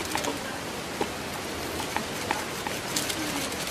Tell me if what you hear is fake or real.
real